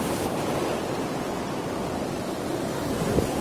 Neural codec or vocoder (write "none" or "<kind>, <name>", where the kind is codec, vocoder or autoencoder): none